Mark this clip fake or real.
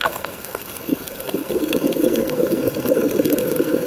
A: fake